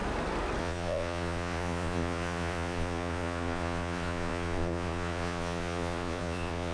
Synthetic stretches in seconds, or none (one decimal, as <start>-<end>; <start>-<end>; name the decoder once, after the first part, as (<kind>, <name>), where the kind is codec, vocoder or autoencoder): 0.6-6.7 (vocoder, Vocos)